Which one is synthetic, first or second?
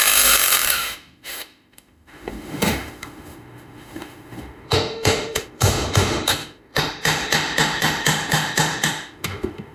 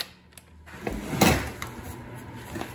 first